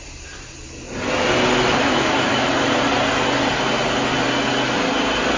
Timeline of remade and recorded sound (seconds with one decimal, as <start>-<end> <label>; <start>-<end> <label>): 0.0-1.8 recorded; 1.8-2.5 remade; 2.5-5.4 recorded